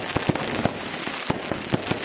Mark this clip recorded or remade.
recorded